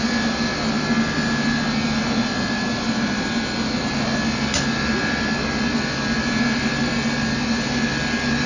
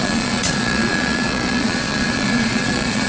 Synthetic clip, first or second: second